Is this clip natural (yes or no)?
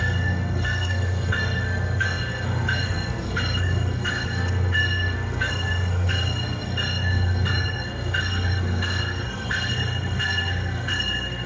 no